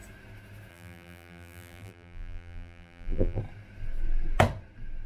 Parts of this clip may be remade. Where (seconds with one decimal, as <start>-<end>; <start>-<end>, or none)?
0.7-3.4